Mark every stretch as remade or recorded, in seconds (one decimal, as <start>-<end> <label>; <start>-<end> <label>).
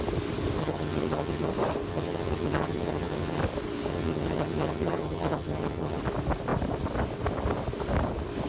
0.0-0.6 recorded; 0.6-1.5 remade; 1.5-1.9 recorded; 1.9-3.4 remade; 3.4-3.9 recorded; 3.9-6.0 remade; 6.0-8.5 recorded